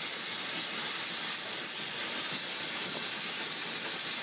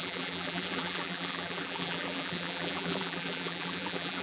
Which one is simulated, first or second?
second